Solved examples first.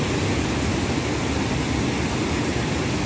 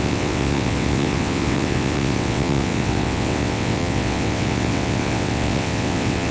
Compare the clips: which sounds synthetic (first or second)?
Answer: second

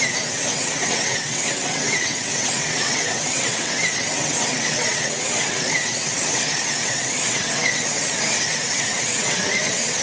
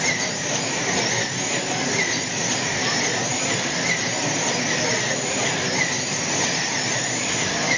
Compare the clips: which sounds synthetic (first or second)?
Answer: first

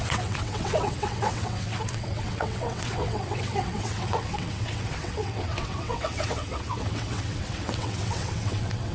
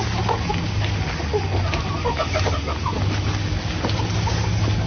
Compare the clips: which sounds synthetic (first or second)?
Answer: first